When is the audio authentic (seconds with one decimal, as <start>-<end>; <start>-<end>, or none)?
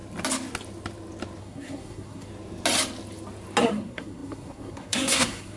0.0-1.4; 2.3-3.6